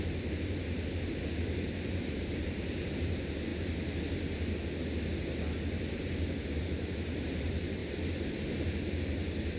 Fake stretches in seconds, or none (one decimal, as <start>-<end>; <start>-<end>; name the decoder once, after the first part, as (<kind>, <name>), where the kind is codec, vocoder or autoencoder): 0.0-3.5 (vocoder, BigVGAN v2); 6.6-7.8; 9.0-9.6